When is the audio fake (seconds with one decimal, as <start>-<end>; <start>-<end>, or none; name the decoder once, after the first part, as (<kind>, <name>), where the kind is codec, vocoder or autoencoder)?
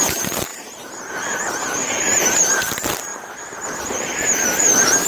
0.5-2.4 (vocoder, BigVGAN v2); 3.1-3.8